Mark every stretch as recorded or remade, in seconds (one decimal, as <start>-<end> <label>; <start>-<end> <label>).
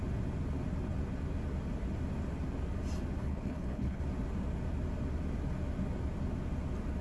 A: 0.0-3.2 recorded; 3.2-4.0 remade; 4.0-7.0 recorded